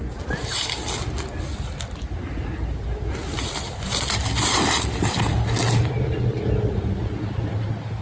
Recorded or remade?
recorded